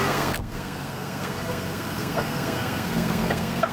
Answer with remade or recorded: remade